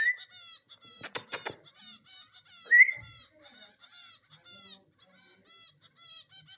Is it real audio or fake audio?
real